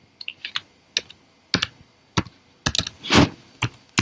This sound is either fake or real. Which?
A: real